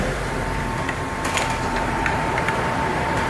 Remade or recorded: remade